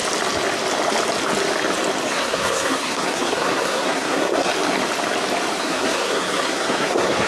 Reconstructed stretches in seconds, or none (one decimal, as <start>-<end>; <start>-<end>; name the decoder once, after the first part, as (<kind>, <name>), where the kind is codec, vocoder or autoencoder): 2.1-4.5 (codec, SNAC); 5.6-7.3